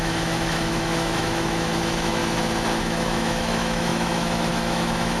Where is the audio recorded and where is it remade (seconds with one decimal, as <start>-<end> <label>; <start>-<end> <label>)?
0.0-2.2 remade; 2.2-2.8 recorded; 2.8-5.2 remade